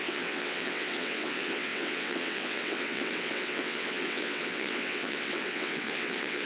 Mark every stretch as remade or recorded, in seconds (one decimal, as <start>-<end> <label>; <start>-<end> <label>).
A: 0.0-6.4 remade